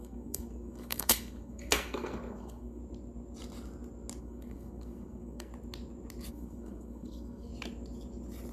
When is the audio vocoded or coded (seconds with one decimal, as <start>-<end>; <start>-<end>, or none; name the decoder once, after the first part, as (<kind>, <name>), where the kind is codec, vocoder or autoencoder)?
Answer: 0.0-2.8 (codec, SNAC); 4.2-5.5; 6.3-7.5